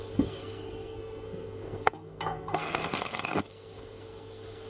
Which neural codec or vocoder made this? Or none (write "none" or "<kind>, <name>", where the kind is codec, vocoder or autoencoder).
codec, SNAC